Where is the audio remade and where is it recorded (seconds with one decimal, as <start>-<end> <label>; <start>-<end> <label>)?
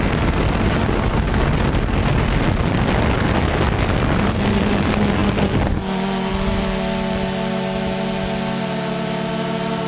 0.0-9.9 recorded